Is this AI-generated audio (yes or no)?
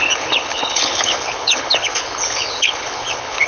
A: yes